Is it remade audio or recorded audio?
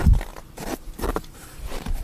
remade